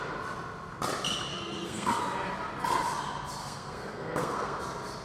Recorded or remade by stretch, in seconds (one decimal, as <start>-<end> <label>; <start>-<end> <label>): 0.0-1.3 recorded; 1.3-2.0 remade; 2.0-3.4 recorded; 3.4-4.6 remade; 4.6-5.0 recorded